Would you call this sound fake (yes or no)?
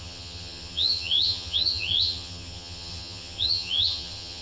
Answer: yes